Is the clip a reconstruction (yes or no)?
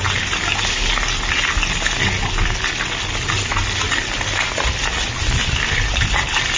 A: no